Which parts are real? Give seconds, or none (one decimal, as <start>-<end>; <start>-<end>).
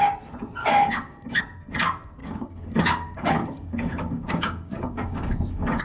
0.0-0.6; 1.4-2.2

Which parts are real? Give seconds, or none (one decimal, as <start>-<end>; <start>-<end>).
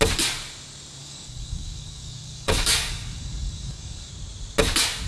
0.0-1.0; 4.1-5.1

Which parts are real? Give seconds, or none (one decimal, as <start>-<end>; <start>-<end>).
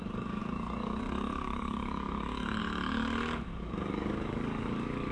none